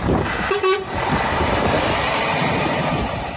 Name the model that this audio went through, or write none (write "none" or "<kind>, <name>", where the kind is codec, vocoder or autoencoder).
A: vocoder, BigVGAN v2